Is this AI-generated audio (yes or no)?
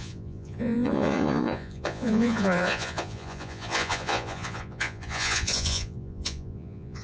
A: yes